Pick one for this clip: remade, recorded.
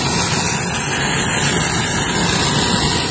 recorded